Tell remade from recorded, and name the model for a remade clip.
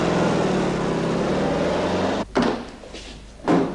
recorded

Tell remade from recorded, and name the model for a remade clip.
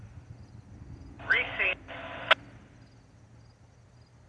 recorded